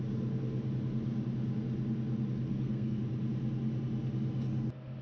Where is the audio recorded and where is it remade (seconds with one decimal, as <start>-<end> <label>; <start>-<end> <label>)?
0.0-2.5 recorded; 2.5-3.0 remade; 3.0-5.0 recorded